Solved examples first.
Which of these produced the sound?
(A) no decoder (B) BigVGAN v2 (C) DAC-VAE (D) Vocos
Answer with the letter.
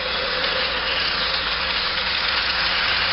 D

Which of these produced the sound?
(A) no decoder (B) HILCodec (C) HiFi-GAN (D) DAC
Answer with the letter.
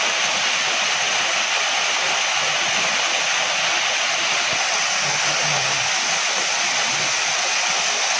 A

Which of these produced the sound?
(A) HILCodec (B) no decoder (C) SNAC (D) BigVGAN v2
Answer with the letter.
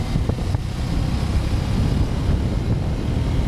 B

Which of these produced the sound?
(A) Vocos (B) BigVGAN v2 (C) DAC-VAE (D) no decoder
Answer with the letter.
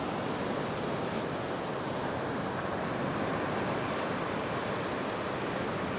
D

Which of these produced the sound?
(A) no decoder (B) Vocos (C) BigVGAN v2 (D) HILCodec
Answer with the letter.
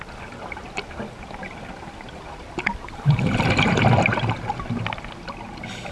A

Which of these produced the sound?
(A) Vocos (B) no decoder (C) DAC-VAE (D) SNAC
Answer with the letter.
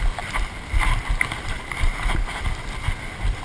B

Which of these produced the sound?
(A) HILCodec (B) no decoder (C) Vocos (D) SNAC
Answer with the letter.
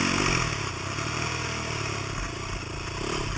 B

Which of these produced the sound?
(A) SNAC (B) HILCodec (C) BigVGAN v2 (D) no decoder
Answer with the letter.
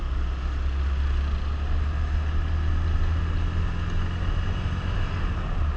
D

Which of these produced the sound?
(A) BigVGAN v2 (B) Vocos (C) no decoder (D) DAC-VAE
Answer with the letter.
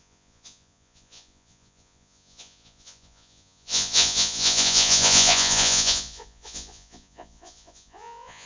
B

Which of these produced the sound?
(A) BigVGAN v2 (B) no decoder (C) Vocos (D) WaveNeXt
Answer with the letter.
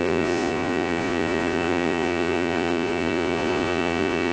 C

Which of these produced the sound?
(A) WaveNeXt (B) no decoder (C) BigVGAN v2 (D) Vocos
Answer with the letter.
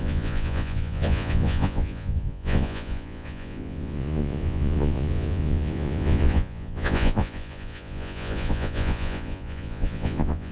D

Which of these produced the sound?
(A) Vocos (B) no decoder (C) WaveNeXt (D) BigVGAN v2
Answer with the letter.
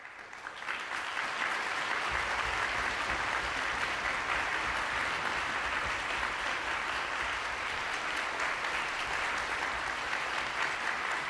B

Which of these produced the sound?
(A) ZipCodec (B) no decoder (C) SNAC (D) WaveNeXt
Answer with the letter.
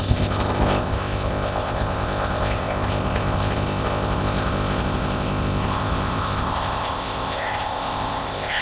A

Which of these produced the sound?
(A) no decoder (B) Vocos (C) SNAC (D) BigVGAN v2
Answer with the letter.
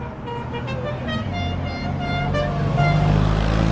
A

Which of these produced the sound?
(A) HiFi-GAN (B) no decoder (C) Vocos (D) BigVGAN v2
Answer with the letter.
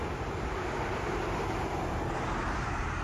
D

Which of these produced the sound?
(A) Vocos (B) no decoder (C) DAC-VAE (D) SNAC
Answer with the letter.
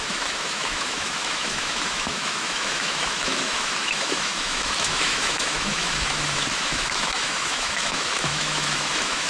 C